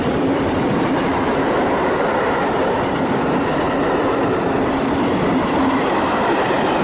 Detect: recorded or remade recorded